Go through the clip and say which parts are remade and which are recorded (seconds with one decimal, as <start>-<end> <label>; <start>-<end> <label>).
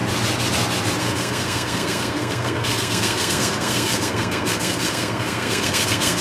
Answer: 0.0-1.0 recorded; 1.0-6.2 remade